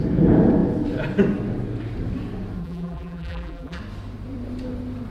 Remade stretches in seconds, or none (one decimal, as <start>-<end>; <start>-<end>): 2.6-3.8